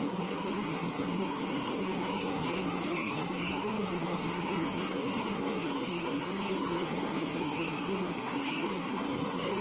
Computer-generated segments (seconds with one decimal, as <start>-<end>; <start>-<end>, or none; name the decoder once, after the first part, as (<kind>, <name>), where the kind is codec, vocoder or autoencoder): 0.0-9.6 (codec, SNAC)